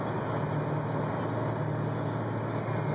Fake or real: real